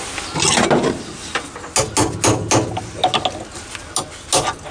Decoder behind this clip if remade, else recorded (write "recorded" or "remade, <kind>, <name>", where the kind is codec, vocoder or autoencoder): recorded